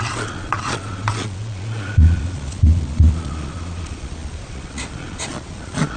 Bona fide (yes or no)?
no